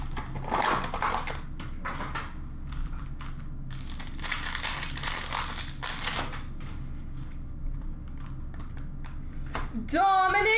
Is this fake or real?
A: real